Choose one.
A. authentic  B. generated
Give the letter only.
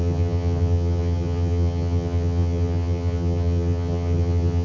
B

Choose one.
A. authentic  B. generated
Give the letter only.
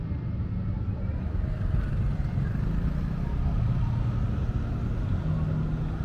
A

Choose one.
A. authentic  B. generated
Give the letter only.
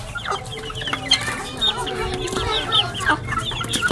A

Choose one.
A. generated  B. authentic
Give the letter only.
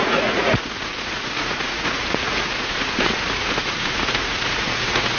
A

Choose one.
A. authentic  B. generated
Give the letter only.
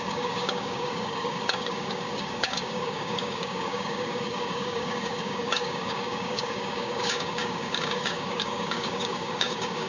B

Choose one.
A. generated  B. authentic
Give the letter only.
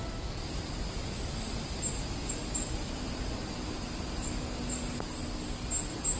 B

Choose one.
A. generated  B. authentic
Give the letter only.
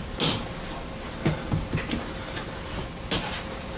B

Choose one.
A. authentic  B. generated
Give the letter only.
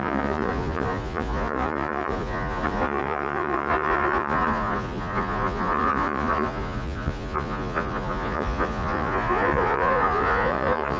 B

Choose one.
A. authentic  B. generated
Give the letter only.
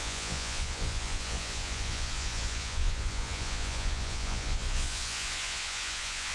B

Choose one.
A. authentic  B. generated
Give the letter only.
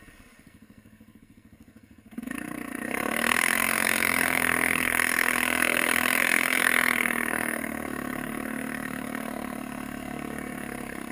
B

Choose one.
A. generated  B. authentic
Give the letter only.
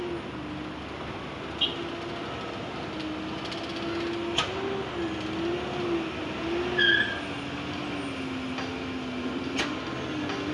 B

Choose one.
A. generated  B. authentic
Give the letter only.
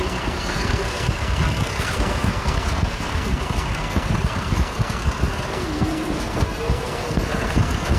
A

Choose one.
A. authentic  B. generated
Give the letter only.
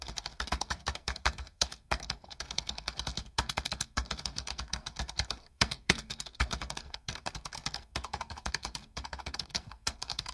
B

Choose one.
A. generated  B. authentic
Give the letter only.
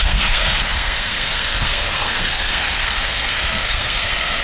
A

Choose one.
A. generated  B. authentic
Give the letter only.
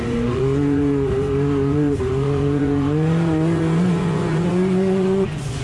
A